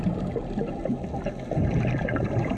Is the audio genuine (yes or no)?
yes